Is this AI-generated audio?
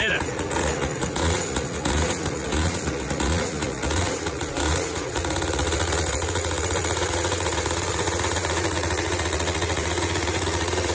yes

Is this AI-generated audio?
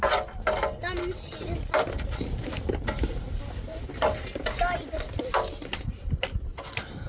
no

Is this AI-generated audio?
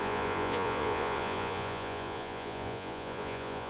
yes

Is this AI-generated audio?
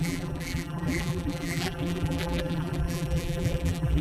yes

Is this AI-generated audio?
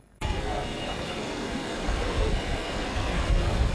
yes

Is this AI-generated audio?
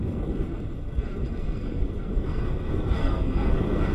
yes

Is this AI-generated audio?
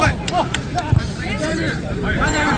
yes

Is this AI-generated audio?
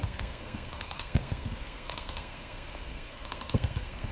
yes